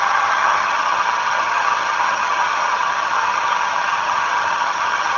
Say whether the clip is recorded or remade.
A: remade